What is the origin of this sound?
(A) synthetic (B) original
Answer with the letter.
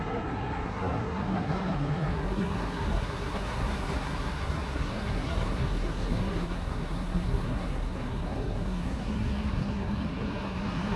A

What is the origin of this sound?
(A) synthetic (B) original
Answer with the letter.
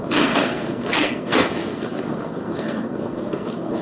A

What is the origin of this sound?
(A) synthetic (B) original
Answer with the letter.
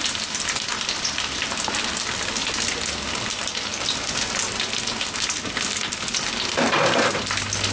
B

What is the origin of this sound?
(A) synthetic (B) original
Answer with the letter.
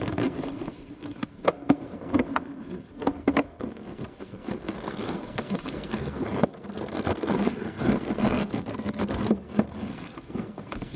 A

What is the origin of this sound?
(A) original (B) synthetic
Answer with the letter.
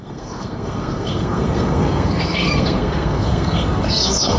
B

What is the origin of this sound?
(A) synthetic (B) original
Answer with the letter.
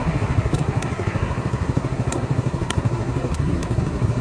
A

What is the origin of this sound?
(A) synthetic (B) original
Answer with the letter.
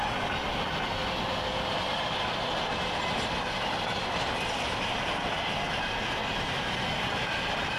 B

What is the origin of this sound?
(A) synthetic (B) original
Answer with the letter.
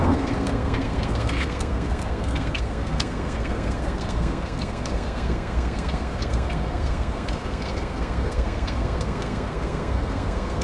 A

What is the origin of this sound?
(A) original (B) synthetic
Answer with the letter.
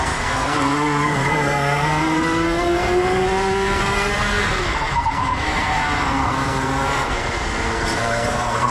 B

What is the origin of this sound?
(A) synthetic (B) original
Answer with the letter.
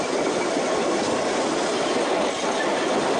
B